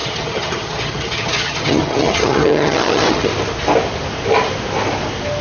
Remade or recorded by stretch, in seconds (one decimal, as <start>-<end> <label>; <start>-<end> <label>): 0.0-3.3 remade; 3.3-5.4 recorded